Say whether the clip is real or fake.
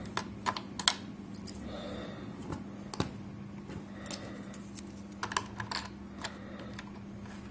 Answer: real